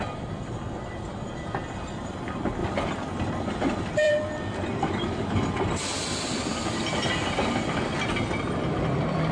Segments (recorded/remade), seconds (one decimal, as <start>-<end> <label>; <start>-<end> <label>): 0.0-2.6 recorded; 2.6-4.1 remade; 4.1-9.3 recorded